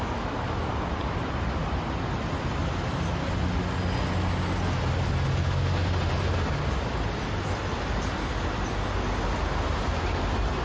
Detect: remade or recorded recorded